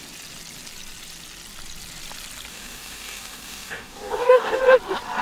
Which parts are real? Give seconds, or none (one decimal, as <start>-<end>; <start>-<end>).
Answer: 0.0-2.5; 4.6-5.2